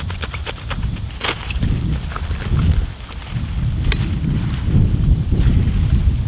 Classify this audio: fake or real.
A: real